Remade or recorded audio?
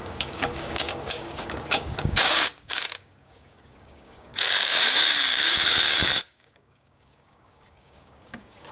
remade